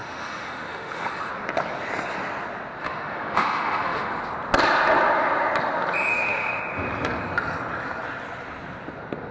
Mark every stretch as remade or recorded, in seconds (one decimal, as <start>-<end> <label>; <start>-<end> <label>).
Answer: 0.0-1.3 remade; 1.3-2.8 recorded; 2.8-4.2 remade; 4.2-6.1 recorded; 6.1-6.6 remade; 6.6-9.3 recorded